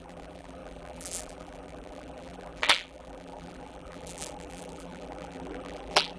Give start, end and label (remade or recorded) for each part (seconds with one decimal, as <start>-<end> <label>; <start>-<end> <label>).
0.0-6.2 remade